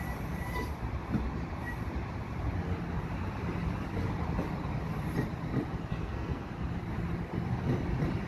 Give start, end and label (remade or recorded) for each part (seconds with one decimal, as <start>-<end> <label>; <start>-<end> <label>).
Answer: 0.0-5.9 recorded; 5.9-6.5 remade; 6.5-8.3 recorded